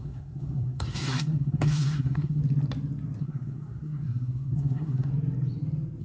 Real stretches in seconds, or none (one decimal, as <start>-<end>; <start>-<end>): 2.4-3.2; 5.1-6.0